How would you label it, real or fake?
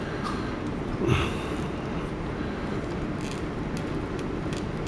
real